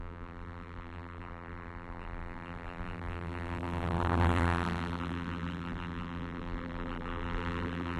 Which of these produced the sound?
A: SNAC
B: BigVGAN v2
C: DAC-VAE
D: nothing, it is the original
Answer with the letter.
B